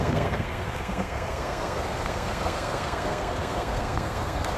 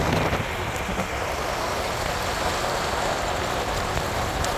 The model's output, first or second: first